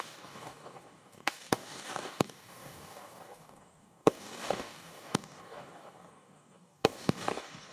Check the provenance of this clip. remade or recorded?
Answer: remade